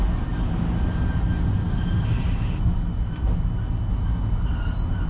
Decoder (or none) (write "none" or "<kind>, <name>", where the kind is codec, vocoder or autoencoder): none